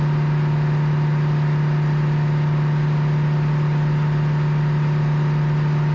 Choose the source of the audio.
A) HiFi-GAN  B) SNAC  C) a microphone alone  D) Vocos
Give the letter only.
C